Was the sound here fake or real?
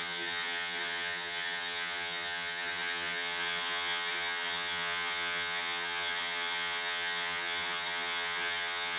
fake